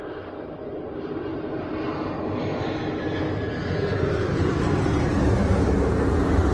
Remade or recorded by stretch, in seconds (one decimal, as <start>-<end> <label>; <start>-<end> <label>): 0.0-6.5 recorded